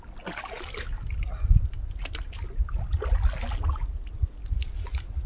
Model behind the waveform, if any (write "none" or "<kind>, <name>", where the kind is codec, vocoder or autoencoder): none